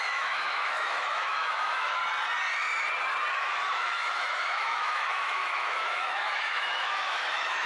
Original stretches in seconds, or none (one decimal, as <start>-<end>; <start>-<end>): 2.0-3.3